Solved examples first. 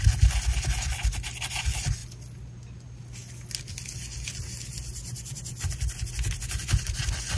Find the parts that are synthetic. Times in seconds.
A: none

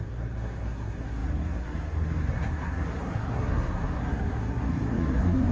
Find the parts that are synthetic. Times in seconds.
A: 0.0-5.5 (codec, SNAC)

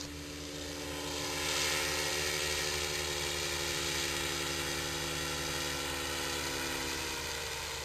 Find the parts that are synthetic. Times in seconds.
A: none

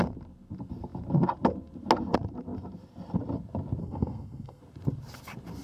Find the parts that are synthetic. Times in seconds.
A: 3.8-4.6 (codec, SNAC)

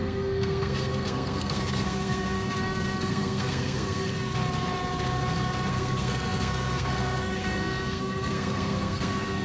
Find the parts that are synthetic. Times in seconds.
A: 0.0-4.1 (codec, SNAC); 5.7-9.4

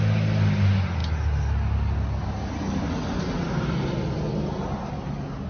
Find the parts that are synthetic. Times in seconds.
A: none

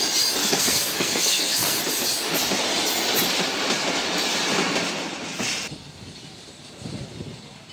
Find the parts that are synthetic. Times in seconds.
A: 0.4-1.8 (codec, SNAC)

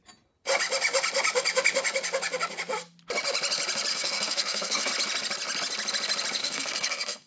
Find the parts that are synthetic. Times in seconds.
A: 3.9-4.9 (codec, SNAC); 6.4-7.3